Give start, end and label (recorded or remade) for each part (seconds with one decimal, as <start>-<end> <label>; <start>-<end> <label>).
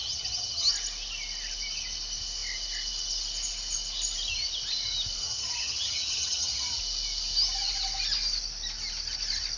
0.0-0.7 remade; 0.7-5.2 recorded; 5.2-6.8 remade; 6.8-9.6 recorded